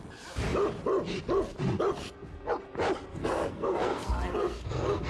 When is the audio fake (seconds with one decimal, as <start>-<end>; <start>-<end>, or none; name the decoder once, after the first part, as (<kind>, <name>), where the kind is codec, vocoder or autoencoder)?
3.1-5.1 (codec, SNAC)